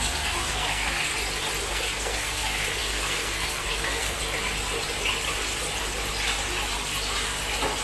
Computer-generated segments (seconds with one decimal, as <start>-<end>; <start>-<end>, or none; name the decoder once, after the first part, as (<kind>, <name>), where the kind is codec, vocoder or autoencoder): 0.0-1.1 (codec, SNAC); 1.7-4.2